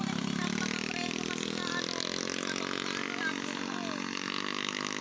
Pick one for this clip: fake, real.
real